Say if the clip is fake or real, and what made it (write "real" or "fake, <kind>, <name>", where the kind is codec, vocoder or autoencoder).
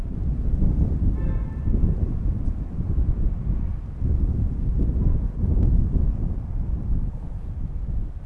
real